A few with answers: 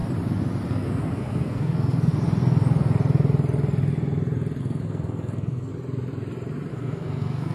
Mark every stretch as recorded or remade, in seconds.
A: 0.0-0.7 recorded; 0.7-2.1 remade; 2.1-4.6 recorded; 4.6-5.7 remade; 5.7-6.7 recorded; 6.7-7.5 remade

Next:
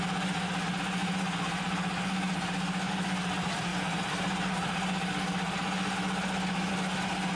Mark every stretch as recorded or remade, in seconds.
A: 0.0-7.4 recorded

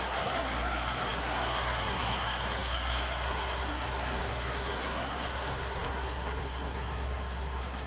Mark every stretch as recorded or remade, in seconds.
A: 0.0-7.9 remade